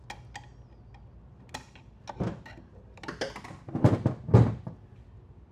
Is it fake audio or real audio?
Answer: real